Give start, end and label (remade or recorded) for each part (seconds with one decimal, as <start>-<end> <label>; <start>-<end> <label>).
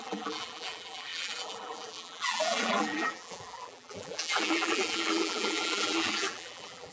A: 0.0-6.9 remade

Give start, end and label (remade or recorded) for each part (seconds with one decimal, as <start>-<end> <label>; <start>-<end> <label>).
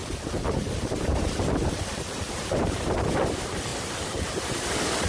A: 0.0-3.1 remade; 3.1-3.7 recorded; 3.7-4.4 remade; 4.4-5.1 recorded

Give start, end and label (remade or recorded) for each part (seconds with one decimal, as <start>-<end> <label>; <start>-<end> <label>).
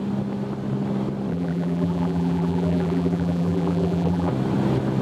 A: 0.0-1.3 recorded; 1.3-4.3 remade; 4.3-5.0 recorded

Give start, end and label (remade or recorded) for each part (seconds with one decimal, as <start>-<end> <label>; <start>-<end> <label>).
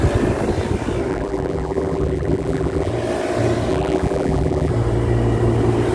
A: 0.0-1.1 recorded; 1.1-2.9 remade; 2.9-3.7 recorded; 3.7-4.7 remade; 4.7-5.9 recorded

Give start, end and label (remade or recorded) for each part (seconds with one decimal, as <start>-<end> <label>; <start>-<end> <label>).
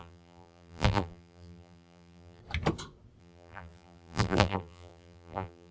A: 0.0-2.4 remade; 2.4-3.2 recorded; 3.2-5.7 remade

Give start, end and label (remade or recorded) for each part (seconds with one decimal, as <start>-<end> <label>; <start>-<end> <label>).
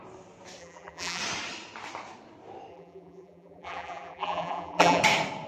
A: 0.0-0.6 recorded; 0.6-1.2 remade; 1.2-2.7 recorded; 2.7-5.0 remade; 5.0-5.5 recorded